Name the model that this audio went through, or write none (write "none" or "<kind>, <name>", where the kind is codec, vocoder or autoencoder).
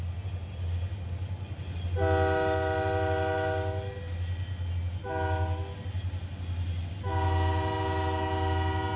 none